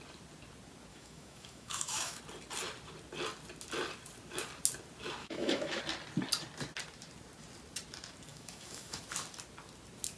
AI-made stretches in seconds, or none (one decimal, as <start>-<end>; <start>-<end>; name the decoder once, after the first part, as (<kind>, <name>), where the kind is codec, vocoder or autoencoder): 0.9-2.2 (autoencoder, DAC-VAE); 5.2-5.8; 8.3-9.0